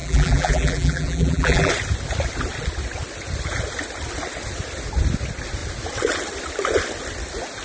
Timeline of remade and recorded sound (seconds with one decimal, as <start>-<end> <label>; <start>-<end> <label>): 0.0-1.7 remade; 1.7-7.6 recorded

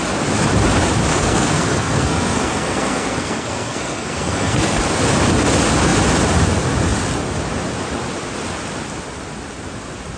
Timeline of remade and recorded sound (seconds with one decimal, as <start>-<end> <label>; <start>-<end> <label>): 0.0-1.1 recorded; 1.1-4.8 remade; 4.8-10.2 recorded